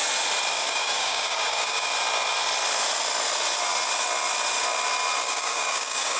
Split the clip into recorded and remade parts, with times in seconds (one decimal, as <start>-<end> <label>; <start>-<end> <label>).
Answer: 0.0-0.5 recorded; 0.5-1.9 remade; 1.9-5.2 recorded; 5.2-6.2 remade